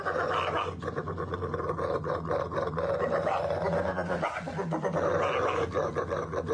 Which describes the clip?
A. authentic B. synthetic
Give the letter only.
A